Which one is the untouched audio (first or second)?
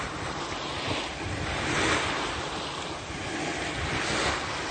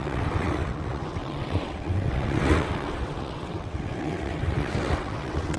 first